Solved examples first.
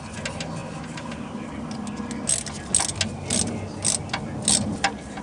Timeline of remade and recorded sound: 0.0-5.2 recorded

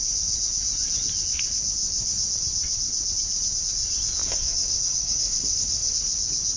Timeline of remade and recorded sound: 0.0-4.2 recorded; 4.2-5.9 remade; 5.9-6.6 recorded

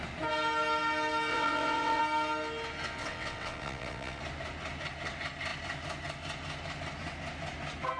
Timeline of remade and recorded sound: 0.0-1.3 recorded; 1.3-2.0 remade; 2.0-3.0 recorded; 3.0-4.2 remade; 4.2-8.0 recorded

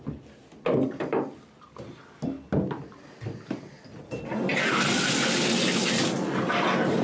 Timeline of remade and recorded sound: 0.0-7.0 recorded

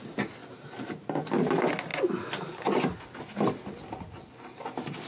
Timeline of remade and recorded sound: 0.0-0.4 recorded; 0.4-1.3 remade; 1.3-5.1 recorded

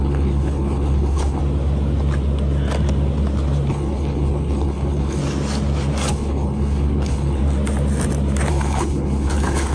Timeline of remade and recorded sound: 0.0-1.4 remade; 1.4-3.7 recorded; 3.7-5.2 remade; 5.2-6.1 recorded; 6.1-7.4 remade; 7.4-8.5 recorded; 8.5-9.7 remade

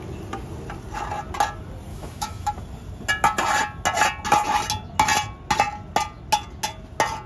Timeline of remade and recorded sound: 0.0-1.9 recorded; 1.9-2.5 remade; 2.5-7.3 recorded